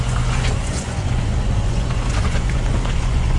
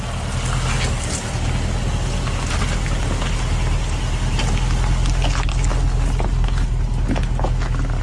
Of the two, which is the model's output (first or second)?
first